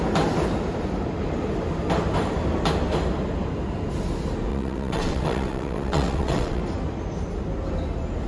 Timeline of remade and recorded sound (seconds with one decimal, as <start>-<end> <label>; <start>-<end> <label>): 0.0-4.5 recorded; 4.5-6.6 remade; 6.6-8.3 recorded